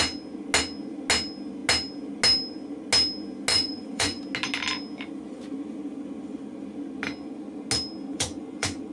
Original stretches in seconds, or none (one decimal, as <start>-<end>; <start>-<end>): 0.0-3.5; 4.2-8.1